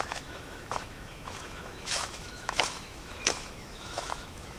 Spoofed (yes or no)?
yes